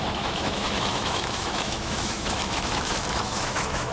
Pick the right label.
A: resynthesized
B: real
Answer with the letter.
A